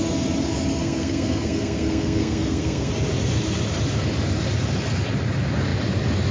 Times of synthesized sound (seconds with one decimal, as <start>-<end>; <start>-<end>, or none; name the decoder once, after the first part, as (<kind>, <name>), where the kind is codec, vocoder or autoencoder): 0.8-2.9 (codec, SNAC)